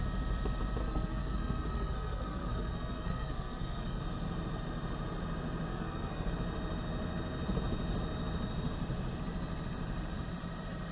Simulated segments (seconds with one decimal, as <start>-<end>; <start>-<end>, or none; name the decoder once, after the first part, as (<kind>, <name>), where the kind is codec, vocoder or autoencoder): 0.8-4.0 (codec, SNAC); 5.7-6.3